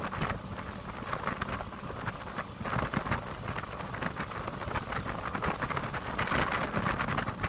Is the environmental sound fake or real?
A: real